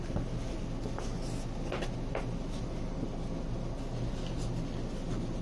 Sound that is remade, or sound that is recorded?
recorded